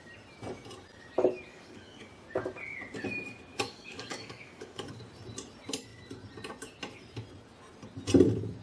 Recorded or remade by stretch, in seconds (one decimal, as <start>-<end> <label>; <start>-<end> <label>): 0.0-1.5 recorded; 1.5-2.1 remade; 2.1-3.5 recorded; 3.5-5.0 remade; 5.0-8.6 recorded